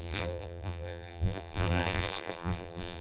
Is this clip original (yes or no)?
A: no